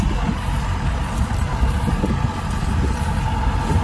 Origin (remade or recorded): recorded